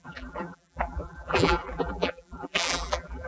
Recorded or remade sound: remade